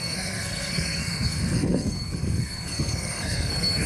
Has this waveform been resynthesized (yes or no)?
yes